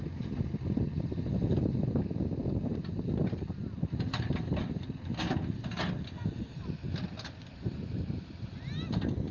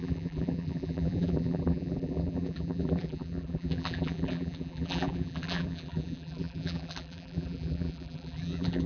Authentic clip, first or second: first